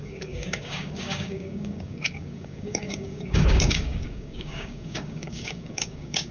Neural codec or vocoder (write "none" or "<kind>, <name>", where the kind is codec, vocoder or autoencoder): codec, DAC